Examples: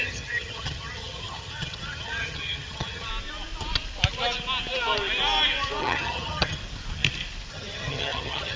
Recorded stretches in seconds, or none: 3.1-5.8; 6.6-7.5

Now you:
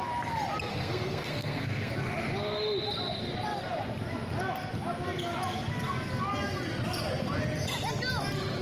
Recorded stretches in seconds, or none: 0.0-0.7; 1.9-8.6

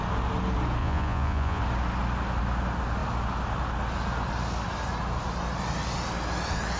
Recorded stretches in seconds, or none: 0.0-0.8; 1.6-6.8

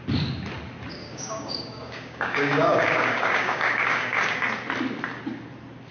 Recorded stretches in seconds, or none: 0.0-1.0; 4.5-5.9